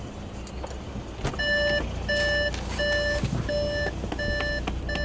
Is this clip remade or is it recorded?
recorded